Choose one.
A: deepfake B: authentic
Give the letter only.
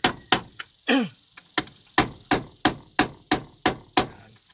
B